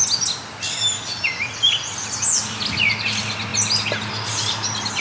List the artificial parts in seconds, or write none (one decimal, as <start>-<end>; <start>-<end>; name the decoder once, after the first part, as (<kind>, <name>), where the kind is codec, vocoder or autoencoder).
none